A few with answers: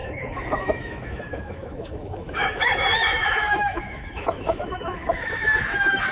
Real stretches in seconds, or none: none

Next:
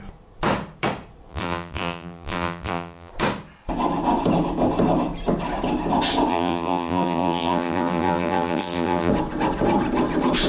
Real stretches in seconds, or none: 0.0-1.3; 3.1-6.3; 9.1-10.5

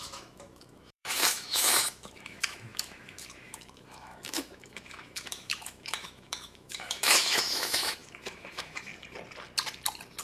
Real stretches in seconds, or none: 8.9-10.2

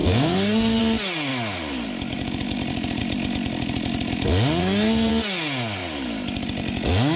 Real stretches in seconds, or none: 0.8-4.6; 5.1-7.2

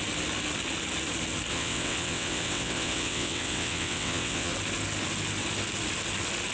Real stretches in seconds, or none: 0.0-1.5; 4.5-6.5